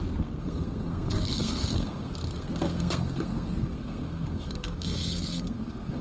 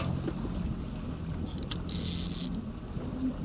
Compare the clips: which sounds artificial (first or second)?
first